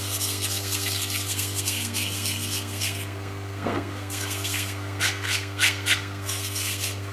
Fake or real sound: fake